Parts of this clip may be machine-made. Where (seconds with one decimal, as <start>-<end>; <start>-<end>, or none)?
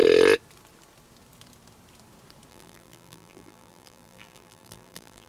2.5-5.3